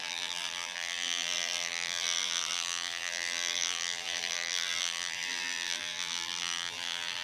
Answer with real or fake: fake